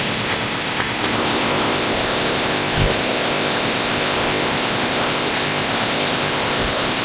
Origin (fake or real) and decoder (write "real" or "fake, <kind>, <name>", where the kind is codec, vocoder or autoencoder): fake, codec, ZipCodec